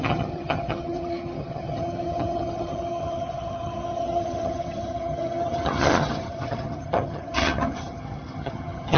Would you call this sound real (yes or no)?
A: no